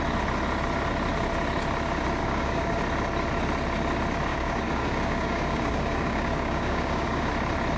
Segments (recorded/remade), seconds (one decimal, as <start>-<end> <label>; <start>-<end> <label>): 0.0-2.2 recorded; 2.2-2.8 remade; 2.8-4.3 recorded; 4.3-7.3 remade; 7.3-7.8 recorded